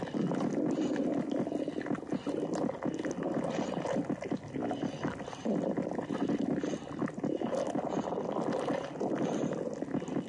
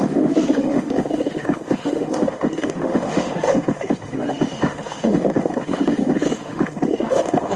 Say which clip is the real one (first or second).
first